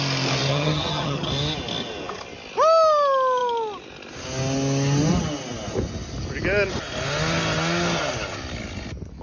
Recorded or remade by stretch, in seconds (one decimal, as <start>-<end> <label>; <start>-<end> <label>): 0.0-0.5 recorded; 0.5-1.3 remade; 1.3-9.2 recorded